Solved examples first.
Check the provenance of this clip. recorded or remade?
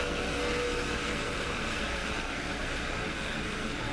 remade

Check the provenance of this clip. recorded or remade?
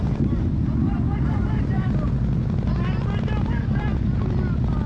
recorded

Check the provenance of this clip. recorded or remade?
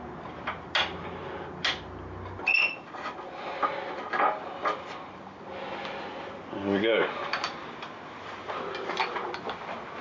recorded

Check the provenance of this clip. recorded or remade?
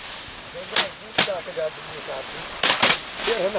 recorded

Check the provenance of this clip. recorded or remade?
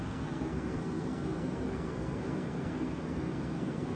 remade